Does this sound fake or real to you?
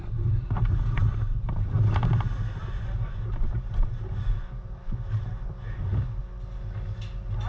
real